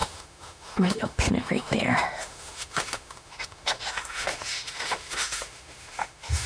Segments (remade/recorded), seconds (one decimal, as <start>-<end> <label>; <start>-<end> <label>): 0.0-6.5 remade